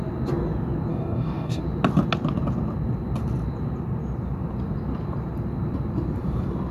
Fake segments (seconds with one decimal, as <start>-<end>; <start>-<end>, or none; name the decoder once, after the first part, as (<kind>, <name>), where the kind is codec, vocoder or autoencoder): 0.9-1.6 (codec, DAC)